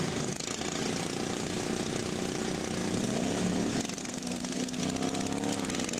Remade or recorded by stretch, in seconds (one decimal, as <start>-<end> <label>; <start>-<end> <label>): 0.0-4.0 recorded; 4.0-4.8 remade; 4.8-6.0 recorded